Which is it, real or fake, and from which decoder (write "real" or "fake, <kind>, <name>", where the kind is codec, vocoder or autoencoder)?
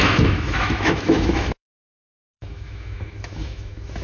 fake, autoencoder, DAC-VAE